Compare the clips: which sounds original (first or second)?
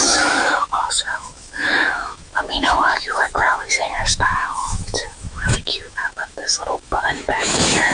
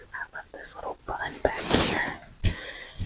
second